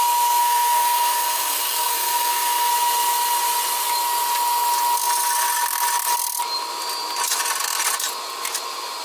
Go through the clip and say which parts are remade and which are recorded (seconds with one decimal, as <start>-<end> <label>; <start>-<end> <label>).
0.0-0.4 recorded; 0.4-2.7 remade; 2.7-9.0 recorded